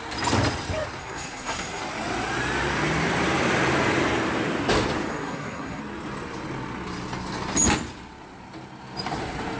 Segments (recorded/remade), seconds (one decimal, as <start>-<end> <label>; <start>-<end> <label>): 0.0-1.0 recorded; 1.0-1.8 remade; 1.8-5.1 recorded; 5.1-5.8 remade; 5.8-9.6 recorded

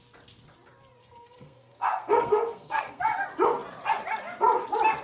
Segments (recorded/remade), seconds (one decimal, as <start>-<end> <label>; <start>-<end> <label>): 0.0-1.0 recorded; 1.0-3.0 remade; 3.0-5.0 recorded

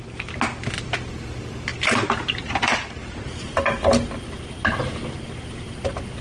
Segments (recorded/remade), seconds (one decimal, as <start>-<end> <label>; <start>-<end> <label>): 0.0-6.2 recorded

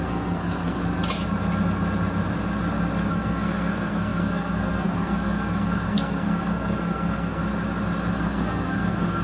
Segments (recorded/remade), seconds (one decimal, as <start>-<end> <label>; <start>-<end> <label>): 0.0-0.8 remade; 0.8-3.1 recorded; 3.1-7.4 remade; 7.4-8.1 recorded; 8.1-9.2 remade

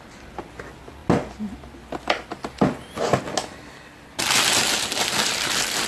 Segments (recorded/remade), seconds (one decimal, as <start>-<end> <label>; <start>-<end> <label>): 0.0-5.9 recorded